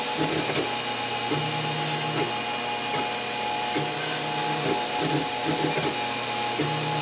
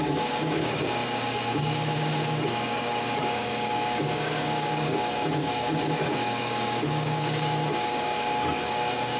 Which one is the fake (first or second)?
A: second